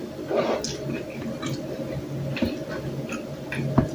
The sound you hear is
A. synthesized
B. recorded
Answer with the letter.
B